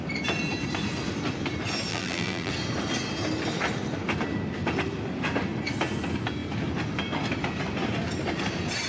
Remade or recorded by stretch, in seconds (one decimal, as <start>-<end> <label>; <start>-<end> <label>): 0.0-1.9 recorded; 1.9-2.5 remade; 2.5-8.9 recorded